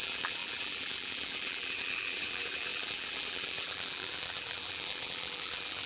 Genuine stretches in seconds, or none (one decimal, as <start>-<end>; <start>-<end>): none